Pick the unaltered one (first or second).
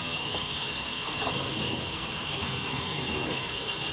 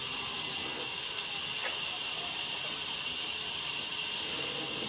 second